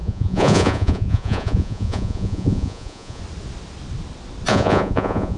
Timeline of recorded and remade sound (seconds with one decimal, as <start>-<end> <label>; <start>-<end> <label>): 0.0-3.2 remade; 3.2-4.5 recorded; 4.5-5.4 remade